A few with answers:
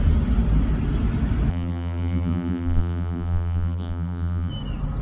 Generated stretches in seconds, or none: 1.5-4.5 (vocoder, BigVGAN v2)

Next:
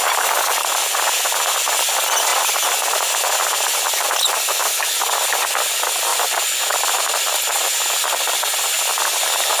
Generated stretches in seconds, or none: none

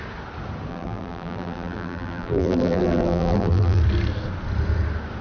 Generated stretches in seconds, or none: 0.7-3.8 (vocoder, BigVGAN v2)

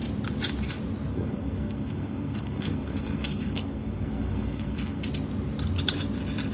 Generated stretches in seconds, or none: 1.1-5.0 (codec, SNAC)

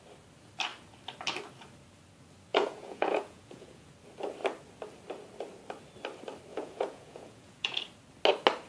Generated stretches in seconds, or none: 2.5-3.9 (vocoder, Vocos); 6.5-7.8